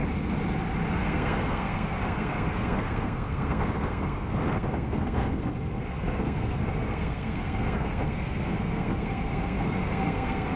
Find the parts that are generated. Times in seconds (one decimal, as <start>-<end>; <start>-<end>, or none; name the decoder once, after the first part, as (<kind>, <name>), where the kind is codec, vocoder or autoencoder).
0.9-10.6 (codec, SNAC)